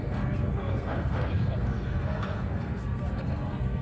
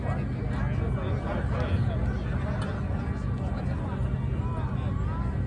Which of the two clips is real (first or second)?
second